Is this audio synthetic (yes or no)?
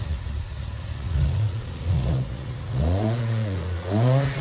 yes